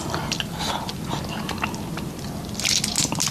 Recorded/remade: recorded